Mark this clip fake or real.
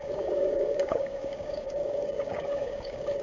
fake